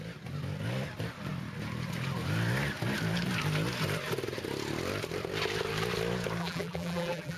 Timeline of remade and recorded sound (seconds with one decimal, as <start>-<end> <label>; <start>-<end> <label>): 0.0-6.4 recorded; 6.4-7.4 remade